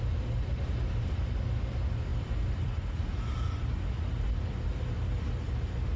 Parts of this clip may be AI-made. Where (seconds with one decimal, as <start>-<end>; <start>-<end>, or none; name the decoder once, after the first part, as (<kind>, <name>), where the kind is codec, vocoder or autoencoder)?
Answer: 2.1-3.0 (vocoder, BigVGAN v2)